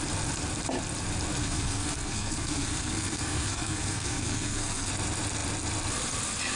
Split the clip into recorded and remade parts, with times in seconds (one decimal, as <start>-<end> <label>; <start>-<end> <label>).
0.0-1.4 recorded; 1.4-4.9 remade; 4.9-6.6 recorded